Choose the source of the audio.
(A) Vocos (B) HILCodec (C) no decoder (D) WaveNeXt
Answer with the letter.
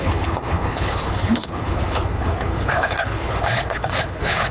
B